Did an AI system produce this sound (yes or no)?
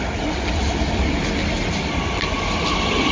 no